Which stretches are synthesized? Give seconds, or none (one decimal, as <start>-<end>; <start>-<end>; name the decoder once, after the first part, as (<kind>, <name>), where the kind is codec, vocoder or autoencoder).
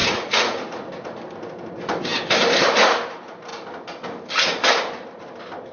0.0-1.2 (vocoder, Vocos)